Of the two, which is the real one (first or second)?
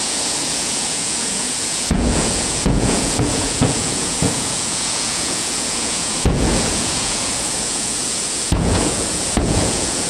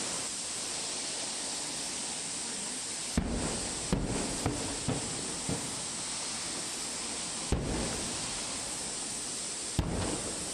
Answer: second